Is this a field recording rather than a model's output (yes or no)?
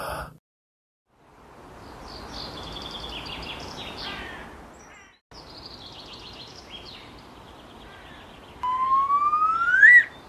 yes